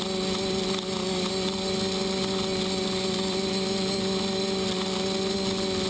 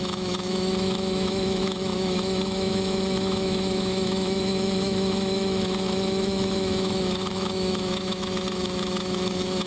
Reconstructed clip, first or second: second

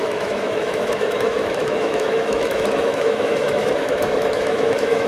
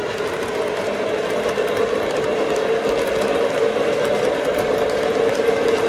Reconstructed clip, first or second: first